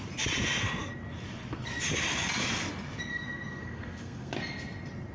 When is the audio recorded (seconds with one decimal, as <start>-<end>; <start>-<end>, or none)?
0.0-3.1; 4.3-5.1